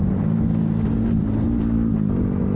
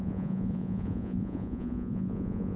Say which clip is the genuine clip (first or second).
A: first